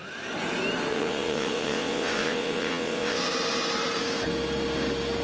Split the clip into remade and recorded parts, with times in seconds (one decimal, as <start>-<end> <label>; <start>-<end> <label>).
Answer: 0.0-0.9 recorded; 0.9-3.2 remade; 3.2-5.2 recorded